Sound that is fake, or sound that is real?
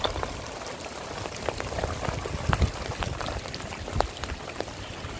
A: real